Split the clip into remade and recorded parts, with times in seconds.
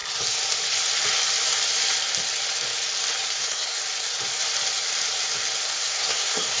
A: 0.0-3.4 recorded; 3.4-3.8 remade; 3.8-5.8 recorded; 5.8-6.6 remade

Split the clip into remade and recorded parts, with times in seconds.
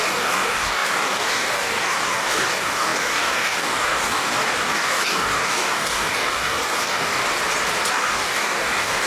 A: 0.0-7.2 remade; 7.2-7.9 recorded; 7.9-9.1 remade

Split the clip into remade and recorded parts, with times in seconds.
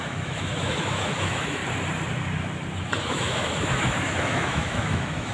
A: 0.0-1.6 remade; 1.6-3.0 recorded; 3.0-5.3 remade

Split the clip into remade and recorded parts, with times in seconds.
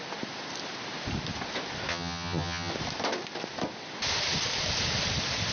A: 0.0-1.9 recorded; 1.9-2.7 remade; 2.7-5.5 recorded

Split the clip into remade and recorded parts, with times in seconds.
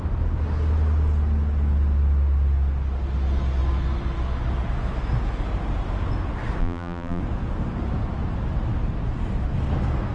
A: 0.0-6.6 recorded; 6.6-7.2 remade; 7.2-10.1 recorded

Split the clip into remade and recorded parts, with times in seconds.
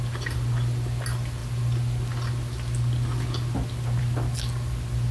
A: 0.0-5.1 recorded